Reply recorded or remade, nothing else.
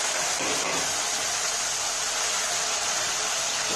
recorded